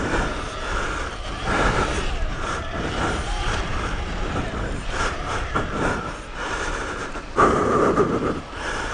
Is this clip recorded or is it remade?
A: remade